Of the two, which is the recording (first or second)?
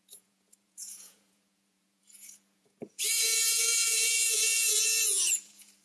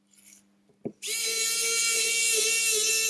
second